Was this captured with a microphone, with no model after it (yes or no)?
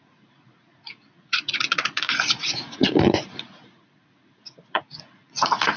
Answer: no